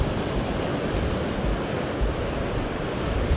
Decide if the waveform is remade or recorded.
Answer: recorded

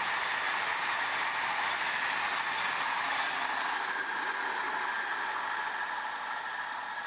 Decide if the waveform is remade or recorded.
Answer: recorded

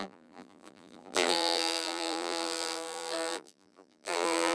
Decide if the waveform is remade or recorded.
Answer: remade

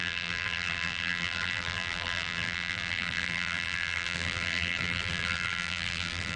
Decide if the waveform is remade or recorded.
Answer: remade